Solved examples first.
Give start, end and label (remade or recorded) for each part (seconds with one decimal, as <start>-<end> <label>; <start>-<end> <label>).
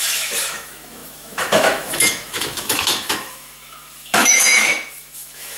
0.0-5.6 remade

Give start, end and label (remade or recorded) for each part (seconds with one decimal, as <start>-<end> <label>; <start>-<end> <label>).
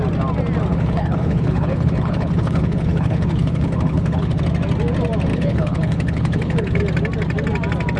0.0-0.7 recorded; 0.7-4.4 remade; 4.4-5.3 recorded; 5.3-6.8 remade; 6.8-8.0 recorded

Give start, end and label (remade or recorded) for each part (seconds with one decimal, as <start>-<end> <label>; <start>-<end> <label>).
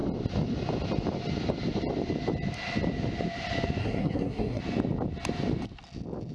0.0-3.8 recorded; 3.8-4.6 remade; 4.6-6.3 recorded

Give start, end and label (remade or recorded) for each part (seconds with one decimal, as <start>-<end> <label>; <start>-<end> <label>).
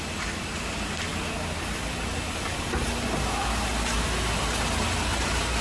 0.0-5.6 recorded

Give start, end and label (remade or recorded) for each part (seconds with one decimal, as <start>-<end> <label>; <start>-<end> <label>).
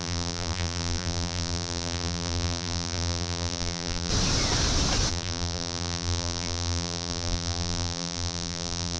0.0-4.1 remade; 4.1-5.1 recorded; 5.1-9.0 remade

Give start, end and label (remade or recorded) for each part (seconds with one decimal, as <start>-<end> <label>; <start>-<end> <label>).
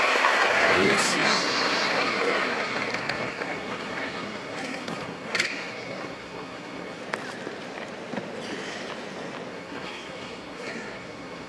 0.0-7.0 remade; 7.0-9.5 recorded; 9.5-11.5 remade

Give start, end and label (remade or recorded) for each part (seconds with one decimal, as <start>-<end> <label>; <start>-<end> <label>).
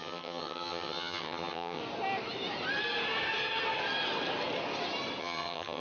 0.0-1.8 remade; 1.8-5.2 recorded; 5.2-5.8 remade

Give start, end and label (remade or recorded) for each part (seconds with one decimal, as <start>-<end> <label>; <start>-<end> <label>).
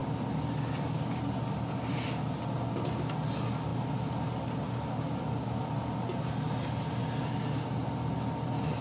0.0-8.8 recorded